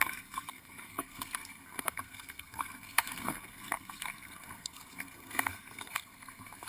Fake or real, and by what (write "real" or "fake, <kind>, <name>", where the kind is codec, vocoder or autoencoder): fake, codec, SNAC